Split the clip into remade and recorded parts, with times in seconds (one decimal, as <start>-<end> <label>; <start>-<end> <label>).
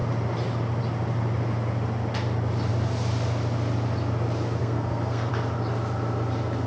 0.0-4.6 recorded; 4.6-5.3 remade; 5.3-6.7 recorded